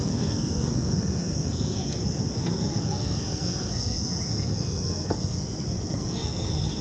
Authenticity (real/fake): fake